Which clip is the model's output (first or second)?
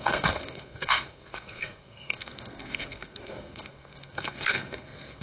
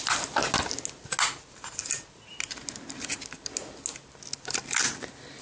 first